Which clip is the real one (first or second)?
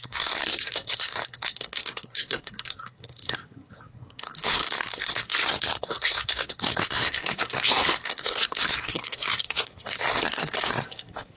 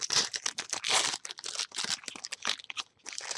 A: second